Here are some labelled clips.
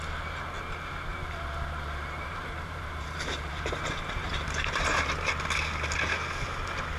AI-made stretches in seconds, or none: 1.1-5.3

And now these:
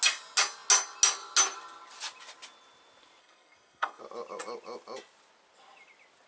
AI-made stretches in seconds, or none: 3.2-4.0

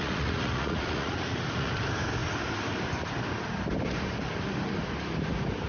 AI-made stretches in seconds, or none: 0.0-1.7

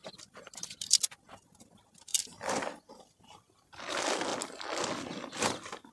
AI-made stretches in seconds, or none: 0.0-0.9; 2.1-3.8; 4.3-5.9

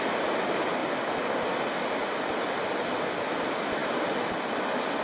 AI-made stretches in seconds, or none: none

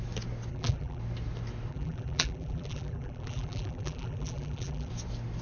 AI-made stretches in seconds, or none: 0.5-1.0; 1.7-4.9